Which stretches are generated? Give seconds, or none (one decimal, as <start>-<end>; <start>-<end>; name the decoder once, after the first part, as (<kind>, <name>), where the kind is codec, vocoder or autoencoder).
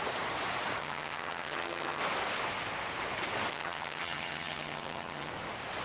0.8-2.0 (vocoder, HiFi-GAN); 3.5-5.3